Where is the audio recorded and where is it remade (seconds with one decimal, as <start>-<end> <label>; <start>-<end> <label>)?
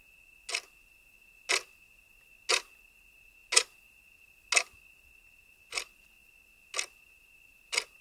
0.0-8.0 recorded